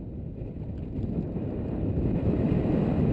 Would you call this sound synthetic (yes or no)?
no